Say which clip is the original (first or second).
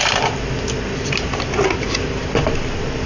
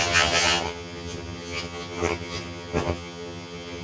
first